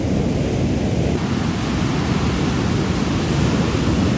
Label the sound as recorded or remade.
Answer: recorded